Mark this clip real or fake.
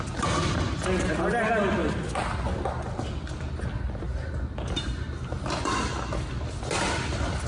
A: real